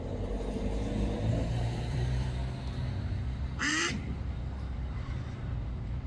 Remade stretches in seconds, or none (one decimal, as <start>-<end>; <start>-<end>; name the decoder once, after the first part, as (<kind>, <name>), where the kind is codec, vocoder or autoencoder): 0.0-2.4 (vocoder, BigVGAN v2); 3.1-6.1